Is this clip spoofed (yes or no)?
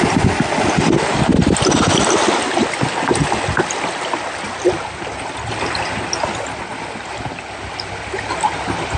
no